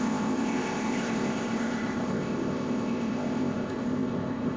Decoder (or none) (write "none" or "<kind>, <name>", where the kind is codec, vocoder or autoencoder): codec, ZipCodec